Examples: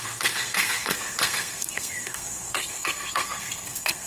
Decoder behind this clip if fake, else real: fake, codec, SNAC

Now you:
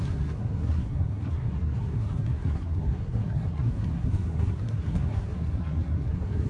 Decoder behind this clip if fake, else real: fake, codec, SNAC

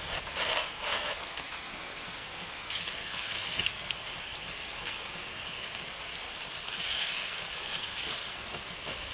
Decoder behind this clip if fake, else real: fake, codec, SNAC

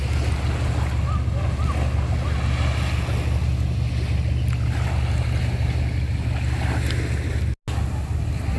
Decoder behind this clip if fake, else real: real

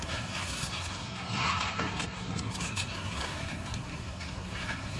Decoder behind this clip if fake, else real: fake, codec, SNAC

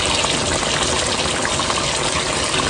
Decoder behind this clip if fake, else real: real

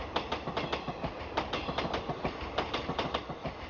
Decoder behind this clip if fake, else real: real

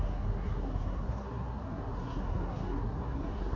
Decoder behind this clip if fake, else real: fake, codec, SNAC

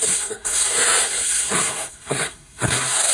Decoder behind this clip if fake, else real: fake, codec, SNAC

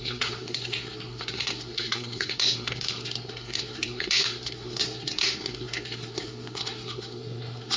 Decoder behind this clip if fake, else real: fake, codec, SNAC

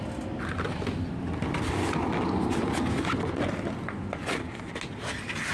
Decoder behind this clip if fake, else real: real